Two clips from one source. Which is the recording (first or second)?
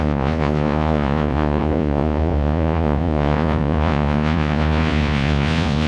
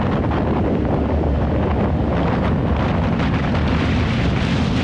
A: second